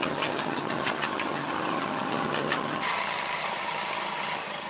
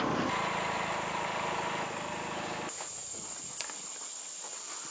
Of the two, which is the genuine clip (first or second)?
second